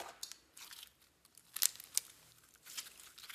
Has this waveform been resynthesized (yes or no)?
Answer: no